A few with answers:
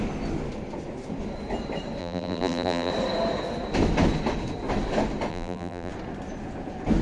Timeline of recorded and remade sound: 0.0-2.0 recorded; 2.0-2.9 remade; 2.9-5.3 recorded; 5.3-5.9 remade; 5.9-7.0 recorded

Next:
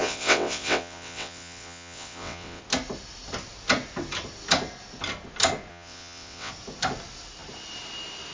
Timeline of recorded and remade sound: 0.0-2.6 remade; 2.6-5.7 recorded; 5.7-6.5 remade; 6.5-8.3 recorded

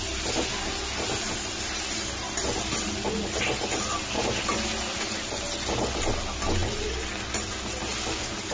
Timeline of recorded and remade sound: 0.0-8.5 recorded

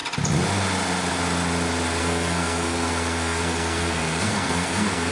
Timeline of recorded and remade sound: 0.0-2.0 recorded; 2.0-5.1 remade